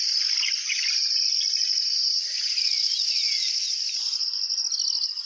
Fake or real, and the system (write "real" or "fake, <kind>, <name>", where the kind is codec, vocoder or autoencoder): real